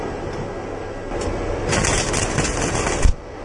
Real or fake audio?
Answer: real